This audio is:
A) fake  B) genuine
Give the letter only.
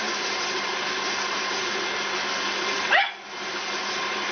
B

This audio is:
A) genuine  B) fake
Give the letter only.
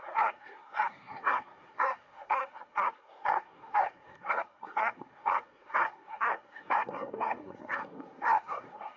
B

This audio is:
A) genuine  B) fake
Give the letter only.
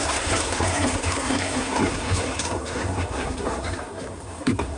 B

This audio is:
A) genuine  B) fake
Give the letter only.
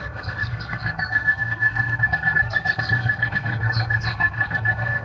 B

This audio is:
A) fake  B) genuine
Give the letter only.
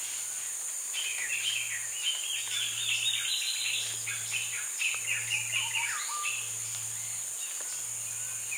B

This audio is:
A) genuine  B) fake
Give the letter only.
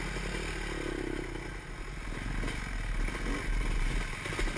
A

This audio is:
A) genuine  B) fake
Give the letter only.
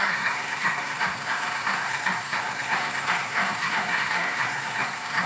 B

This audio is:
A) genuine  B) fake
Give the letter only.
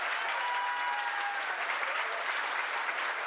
A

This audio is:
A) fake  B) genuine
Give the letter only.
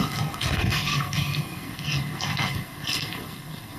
A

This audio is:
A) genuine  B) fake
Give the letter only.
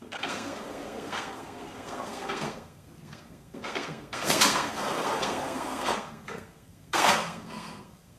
B